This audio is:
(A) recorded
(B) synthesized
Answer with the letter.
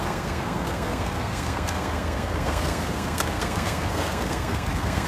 B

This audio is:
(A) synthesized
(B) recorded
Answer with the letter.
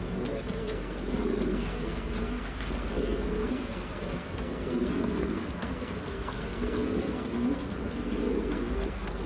A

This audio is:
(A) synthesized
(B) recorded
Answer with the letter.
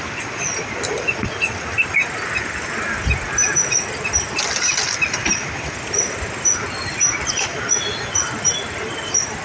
B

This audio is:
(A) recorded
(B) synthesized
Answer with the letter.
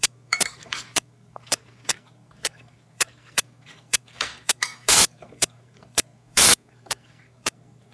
B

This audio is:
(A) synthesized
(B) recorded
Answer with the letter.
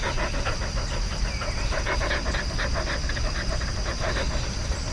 B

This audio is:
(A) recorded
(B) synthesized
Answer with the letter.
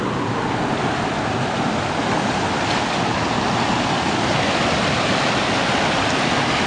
A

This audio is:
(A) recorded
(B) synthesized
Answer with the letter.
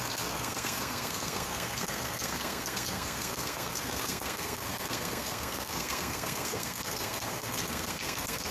B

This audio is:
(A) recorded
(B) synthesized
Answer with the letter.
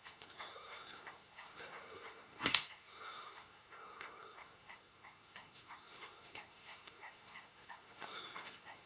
B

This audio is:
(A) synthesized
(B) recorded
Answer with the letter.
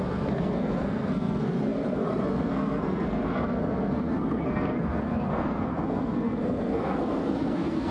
A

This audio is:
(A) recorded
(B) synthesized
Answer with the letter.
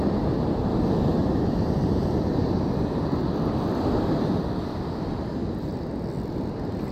A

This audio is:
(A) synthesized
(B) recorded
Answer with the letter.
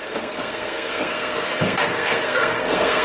A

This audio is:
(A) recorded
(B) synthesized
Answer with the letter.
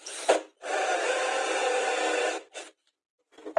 A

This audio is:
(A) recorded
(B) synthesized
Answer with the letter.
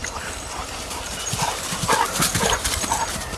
A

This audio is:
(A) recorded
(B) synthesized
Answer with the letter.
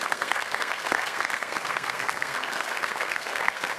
B